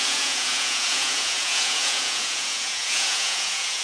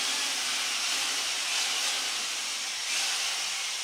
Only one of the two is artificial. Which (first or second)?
first